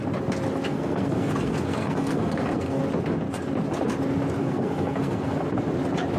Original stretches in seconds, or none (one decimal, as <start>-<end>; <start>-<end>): 0.0-0.7; 2.8-4.4; 5.4-6.2